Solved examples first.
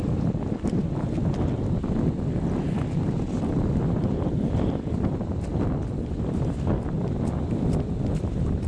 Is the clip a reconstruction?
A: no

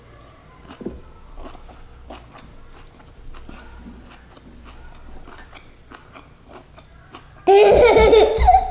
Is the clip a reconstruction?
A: no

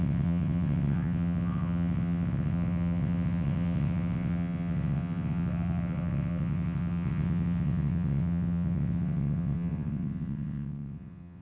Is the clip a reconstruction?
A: yes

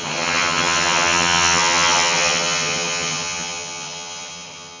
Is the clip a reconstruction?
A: yes